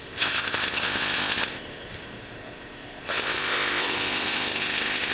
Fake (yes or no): yes